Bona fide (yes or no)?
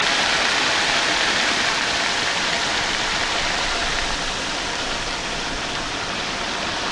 no